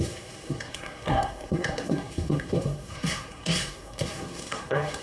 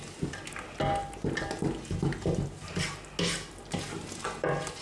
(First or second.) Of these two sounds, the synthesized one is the first